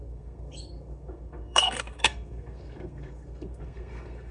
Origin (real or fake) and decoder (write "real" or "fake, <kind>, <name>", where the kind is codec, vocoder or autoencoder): fake, codec, SNAC